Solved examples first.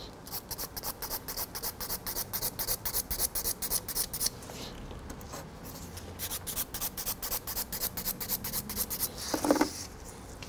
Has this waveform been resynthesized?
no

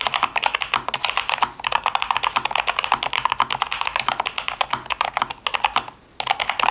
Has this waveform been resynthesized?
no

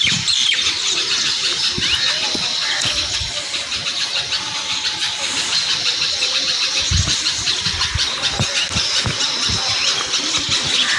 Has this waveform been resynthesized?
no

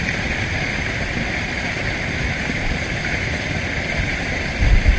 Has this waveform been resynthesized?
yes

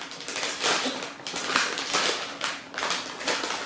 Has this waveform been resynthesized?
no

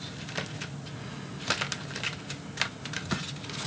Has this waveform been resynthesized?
no